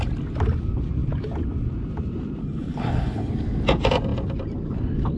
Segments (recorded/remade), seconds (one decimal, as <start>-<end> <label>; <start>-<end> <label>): 0.0-2.4 recorded; 2.4-3.3 remade; 3.3-5.2 recorded